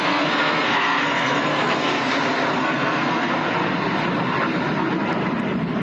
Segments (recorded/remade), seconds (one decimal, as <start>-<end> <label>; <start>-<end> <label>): 0.0-2.0 remade; 2.0-2.6 recorded; 2.6-3.3 remade; 3.3-5.8 recorded